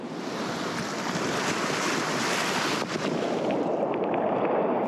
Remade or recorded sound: recorded